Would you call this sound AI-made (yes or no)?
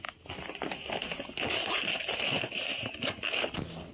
no